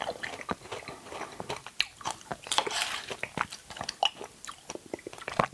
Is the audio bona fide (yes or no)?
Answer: yes